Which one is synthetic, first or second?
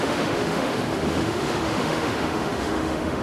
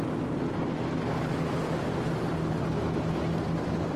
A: first